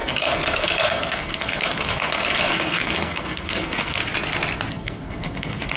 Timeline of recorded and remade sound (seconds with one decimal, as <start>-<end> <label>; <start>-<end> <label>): 0.0-4.0 remade; 4.0-4.7 recorded; 4.7-5.8 remade